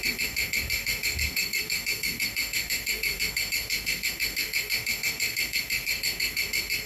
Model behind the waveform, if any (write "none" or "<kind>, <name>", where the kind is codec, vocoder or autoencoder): codec, SNAC